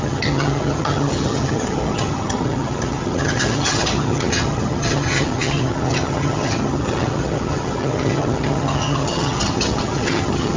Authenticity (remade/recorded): remade